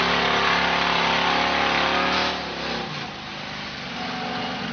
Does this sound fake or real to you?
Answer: real